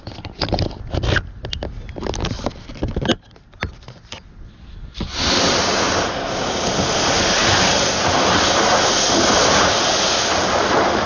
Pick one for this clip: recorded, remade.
recorded